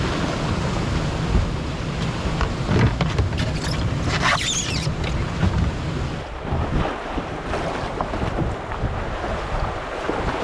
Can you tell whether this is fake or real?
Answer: real